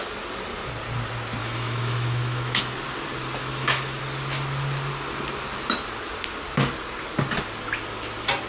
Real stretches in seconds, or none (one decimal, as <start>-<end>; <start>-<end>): 0.0-1.4; 2.6-3.4; 4.0-8.5